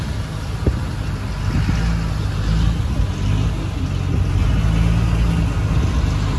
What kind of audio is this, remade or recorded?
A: recorded